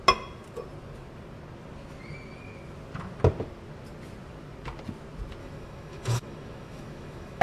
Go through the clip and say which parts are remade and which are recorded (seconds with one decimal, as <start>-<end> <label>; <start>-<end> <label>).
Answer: 0.0-5.4 recorded; 5.4-7.4 remade